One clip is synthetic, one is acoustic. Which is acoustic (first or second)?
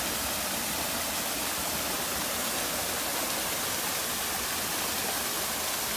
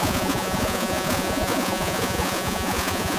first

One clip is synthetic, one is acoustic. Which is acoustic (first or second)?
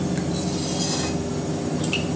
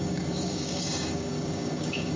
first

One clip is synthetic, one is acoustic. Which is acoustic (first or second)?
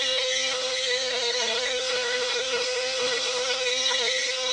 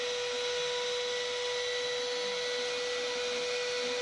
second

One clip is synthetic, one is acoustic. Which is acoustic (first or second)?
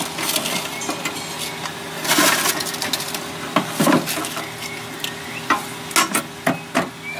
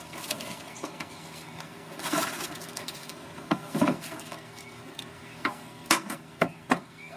first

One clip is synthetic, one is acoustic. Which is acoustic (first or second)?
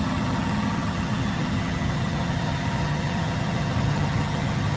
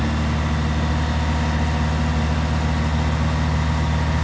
second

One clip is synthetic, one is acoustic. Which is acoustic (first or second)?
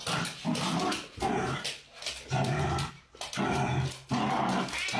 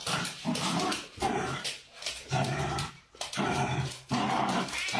first